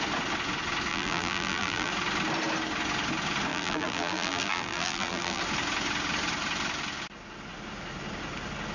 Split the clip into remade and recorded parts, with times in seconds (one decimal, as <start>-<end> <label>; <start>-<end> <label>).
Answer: 0.0-0.9 recorded; 0.9-1.9 remade; 1.9-3.5 recorded; 3.5-5.4 remade; 5.4-8.7 recorded

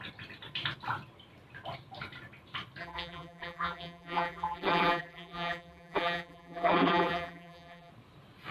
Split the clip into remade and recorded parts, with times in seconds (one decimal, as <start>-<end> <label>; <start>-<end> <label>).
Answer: 0.0-2.8 recorded; 2.8-7.9 remade; 7.9-8.5 recorded

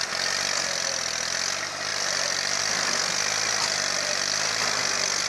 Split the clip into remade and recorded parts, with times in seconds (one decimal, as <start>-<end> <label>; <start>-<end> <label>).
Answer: 0.0-1.9 recorded; 1.9-2.6 remade; 2.6-5.3 recorded